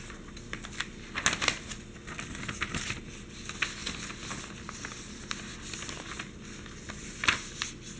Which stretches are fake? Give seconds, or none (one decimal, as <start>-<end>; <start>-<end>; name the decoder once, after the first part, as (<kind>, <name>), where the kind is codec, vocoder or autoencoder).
none